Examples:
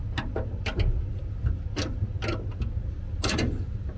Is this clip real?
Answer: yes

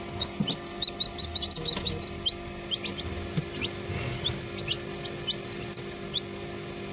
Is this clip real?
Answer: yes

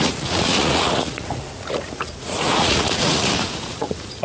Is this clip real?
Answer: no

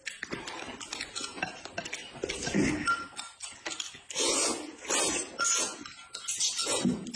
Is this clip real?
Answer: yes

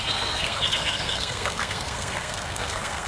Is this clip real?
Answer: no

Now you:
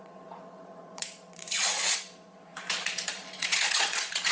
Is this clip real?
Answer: no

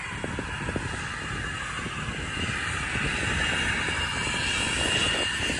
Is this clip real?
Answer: yes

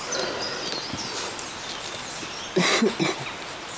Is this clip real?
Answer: yes